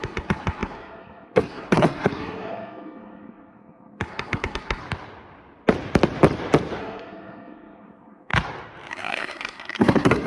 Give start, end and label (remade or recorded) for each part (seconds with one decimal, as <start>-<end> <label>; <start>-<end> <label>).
0.0-4.8 remade; 4.8-6.8 recorded; 6.8-8.3 remade; 8.3-8.9 recorded; 8.9-10.3 remade